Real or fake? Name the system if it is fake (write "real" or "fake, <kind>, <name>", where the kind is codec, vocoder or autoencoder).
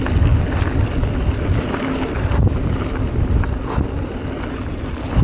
real